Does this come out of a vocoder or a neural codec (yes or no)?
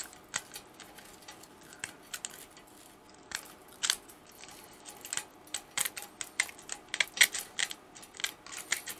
no